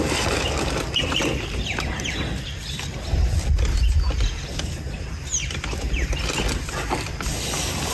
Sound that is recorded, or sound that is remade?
recorded